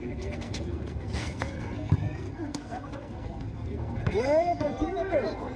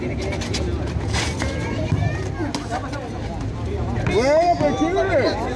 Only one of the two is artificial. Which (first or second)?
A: first